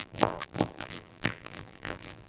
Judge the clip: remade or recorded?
remade